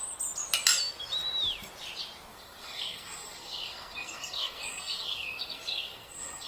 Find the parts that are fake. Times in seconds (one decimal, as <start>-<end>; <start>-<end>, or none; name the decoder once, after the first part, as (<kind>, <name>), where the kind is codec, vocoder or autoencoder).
2.3-6.5 (codec, SNAC)